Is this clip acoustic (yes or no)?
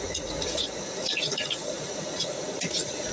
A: no